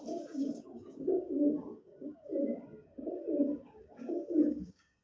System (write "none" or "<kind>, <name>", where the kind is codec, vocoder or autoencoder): codec, DAC